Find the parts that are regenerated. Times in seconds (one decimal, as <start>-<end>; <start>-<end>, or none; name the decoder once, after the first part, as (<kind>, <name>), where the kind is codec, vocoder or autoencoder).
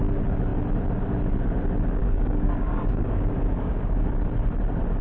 2.0-4.1 (codec, DAC)